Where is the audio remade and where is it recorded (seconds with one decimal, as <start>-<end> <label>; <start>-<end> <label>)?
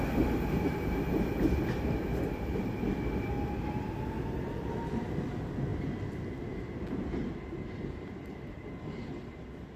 0.0-9.8 recorded